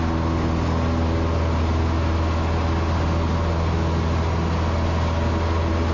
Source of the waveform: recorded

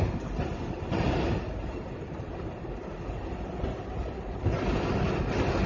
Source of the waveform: recorded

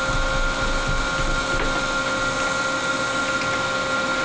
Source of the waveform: recorded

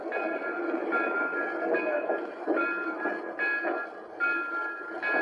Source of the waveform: recorded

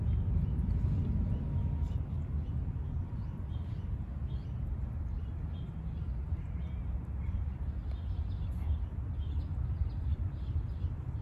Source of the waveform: recorded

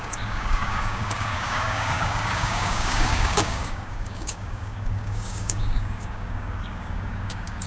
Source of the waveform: remade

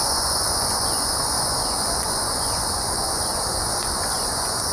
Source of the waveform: remade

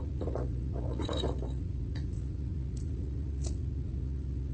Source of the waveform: remade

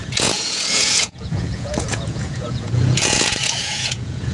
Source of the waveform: remade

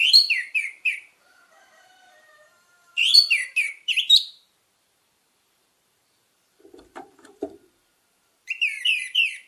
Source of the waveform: remade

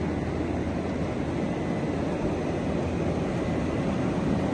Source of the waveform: recorded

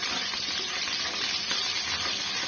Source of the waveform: recorded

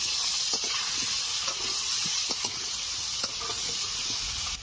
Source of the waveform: remade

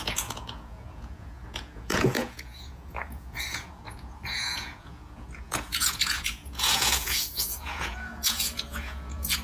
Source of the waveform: remade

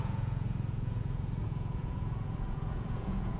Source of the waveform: remade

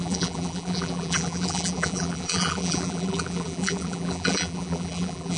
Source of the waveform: remade